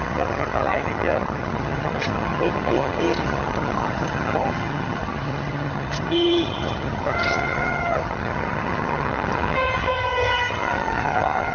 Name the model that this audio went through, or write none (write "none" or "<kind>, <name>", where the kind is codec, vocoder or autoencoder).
vocoder, HiFi-GAN